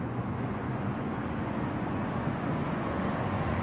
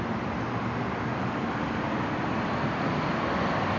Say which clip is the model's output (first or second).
first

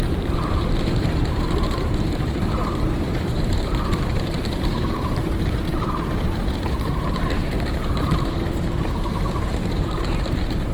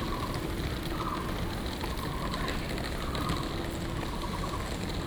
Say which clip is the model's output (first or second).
first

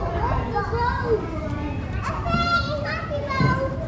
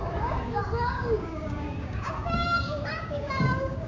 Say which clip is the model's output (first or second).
second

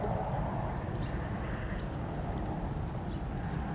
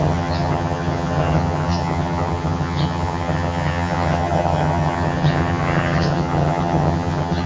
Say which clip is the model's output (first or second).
second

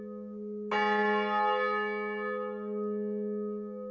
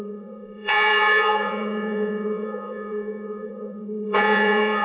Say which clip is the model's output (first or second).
second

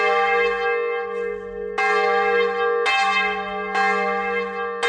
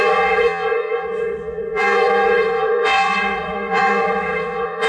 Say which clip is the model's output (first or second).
second